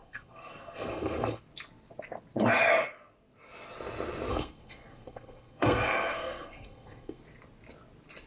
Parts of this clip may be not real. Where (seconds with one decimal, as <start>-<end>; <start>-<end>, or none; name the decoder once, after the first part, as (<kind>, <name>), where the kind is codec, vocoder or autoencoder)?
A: 0.0-1.4 (codec, SNAC); 4.3-7.2

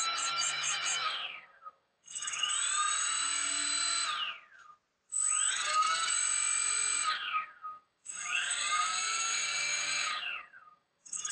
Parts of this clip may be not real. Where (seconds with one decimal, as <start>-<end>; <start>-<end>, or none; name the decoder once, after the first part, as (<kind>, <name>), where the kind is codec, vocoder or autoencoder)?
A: 0.0-2.5 (codec, DAC); 5.5-6.1; 7.1-11.3

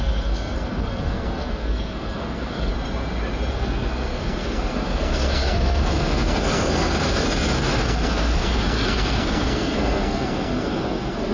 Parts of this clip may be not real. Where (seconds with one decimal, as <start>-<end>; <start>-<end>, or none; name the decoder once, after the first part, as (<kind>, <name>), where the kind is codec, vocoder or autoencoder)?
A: 0.0-2.7 (codec, SNAC); 3.5-11.3

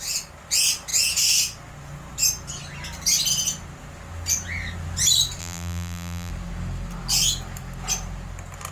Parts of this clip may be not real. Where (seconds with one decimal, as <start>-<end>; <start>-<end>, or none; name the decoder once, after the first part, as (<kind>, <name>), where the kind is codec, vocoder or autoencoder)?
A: 5.4-6.3 (vocoder, BigVGAN v2)